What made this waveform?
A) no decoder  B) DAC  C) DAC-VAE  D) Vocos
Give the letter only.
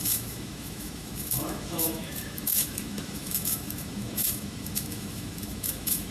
C